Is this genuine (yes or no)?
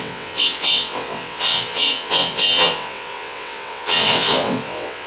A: no